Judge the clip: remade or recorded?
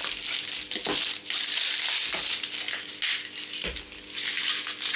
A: recorded